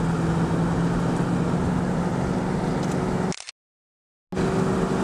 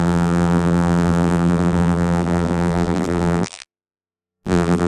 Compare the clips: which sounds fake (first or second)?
second